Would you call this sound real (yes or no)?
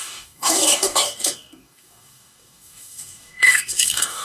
no